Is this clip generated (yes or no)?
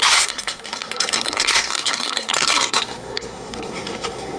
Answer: yes